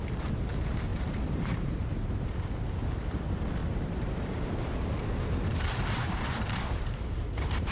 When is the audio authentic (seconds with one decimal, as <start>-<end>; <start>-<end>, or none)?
0.0-0.9; 1.8-3.6

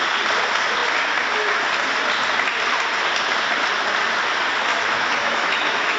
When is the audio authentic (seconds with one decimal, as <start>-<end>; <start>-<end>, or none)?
0.0-4.7

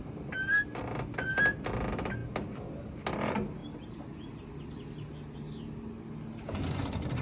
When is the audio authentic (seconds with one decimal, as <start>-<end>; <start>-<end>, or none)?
0.0-7.2